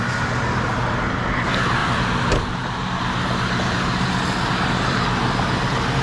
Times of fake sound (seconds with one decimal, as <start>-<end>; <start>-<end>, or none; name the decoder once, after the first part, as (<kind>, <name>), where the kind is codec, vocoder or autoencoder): none